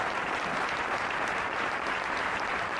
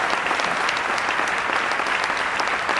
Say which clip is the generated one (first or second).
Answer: first